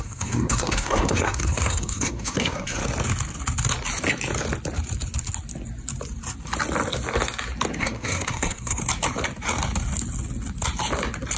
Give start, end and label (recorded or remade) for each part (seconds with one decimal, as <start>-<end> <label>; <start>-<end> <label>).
0.0-2.8 remade; 2.8-7.8 recorded; 7.8-8.8 remade; 8.8-11.4 recorded